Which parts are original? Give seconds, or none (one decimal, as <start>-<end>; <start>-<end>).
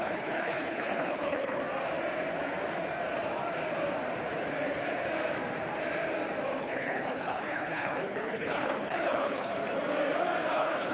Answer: 1.6-6.6; 9.5-10.5